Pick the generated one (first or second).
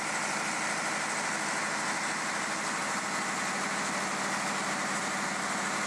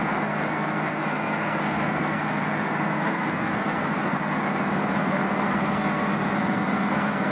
second